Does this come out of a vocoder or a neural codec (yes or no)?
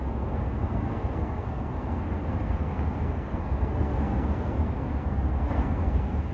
yes